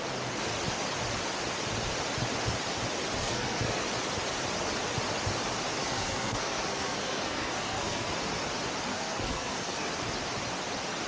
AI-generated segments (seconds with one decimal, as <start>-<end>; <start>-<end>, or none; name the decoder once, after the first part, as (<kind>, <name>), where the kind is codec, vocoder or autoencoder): 3.2-3.8 (codec, SNAC); 5.8-8.1; 8.9-9.9

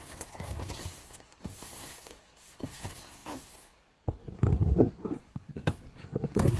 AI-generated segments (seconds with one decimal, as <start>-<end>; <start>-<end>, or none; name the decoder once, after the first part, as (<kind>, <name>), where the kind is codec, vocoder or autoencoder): 0.0-6.6 (codec, SNAC)